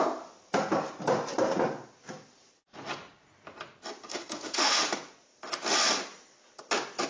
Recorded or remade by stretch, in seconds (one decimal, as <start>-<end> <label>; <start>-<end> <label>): 0.0-4.1 recorded; 4.1-4.8 remade; 4.8-7.1 recorded